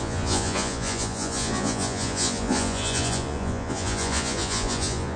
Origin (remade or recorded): remade